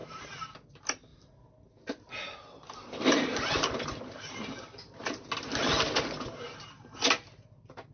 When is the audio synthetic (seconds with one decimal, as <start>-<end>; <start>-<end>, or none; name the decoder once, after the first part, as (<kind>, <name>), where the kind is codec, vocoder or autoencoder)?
none